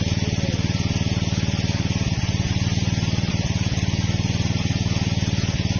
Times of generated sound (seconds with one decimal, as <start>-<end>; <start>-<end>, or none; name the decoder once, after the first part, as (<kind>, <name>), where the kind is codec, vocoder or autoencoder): none